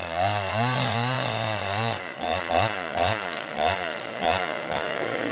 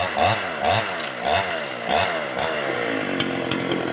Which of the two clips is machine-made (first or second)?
first